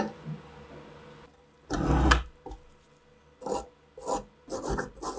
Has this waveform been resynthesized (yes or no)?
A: no